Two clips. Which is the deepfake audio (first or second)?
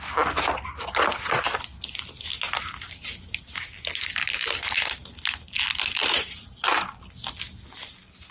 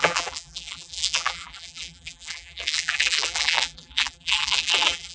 second